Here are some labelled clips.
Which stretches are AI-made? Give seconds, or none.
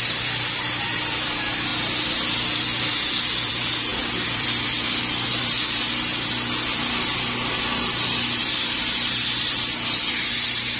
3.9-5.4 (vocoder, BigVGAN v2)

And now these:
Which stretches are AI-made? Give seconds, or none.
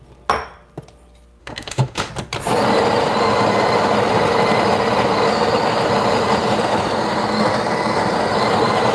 1.4-2.1 (autoencoder, DAC-VAE)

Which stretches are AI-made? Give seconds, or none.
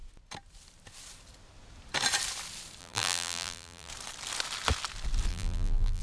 2.8-3.9 (vocoder, BigVGAN v2); 5.3-6.0